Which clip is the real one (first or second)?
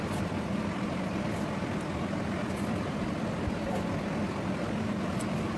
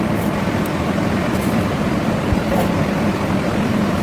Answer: first